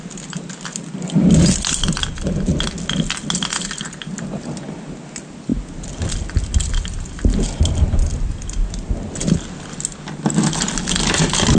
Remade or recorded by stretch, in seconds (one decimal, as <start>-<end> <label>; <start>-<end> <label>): 0.0-11.6 recorded